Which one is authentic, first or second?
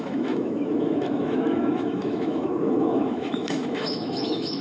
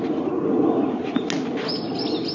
second